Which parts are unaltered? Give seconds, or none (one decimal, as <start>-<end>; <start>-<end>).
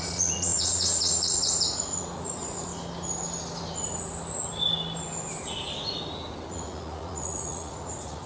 2.7-6.5